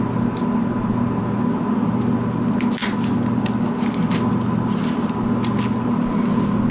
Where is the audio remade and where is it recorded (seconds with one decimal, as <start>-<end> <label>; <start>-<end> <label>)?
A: 0.0-6.7 recorded